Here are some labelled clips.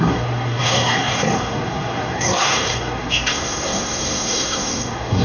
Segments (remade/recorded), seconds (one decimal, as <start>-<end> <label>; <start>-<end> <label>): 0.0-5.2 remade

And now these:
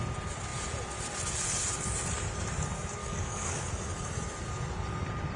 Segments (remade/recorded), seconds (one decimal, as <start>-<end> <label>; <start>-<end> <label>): 0.0-3.0 recorded; 3.0-3.7 remade; 3.7-5.4 recorded

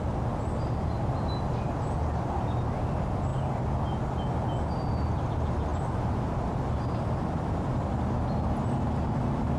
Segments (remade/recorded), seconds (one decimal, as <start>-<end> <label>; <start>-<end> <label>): 0.0-5.7 recorded; 5.7-7.8 remade; 7.8-9.6 recorded

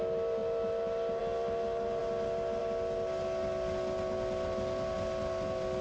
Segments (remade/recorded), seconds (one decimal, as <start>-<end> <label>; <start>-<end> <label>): 0.0-5.8 recorded

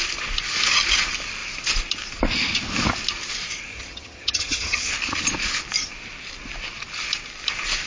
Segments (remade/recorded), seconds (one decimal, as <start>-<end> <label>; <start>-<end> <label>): 0.0-3.7 recorded; 3.7-4.9 remade; 4.9-7.9 recorded

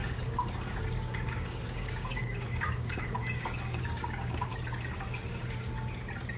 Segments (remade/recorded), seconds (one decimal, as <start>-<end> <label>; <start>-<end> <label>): 0.0-4.5 remade; 4.5-6.4 recorded

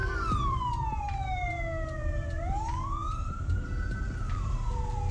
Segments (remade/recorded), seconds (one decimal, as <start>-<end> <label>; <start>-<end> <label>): 0.0-5.1 remade